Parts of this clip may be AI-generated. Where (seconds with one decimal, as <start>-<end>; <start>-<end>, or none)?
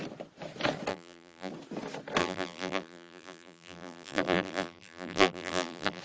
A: 0.9-1.5; 2.2-6.0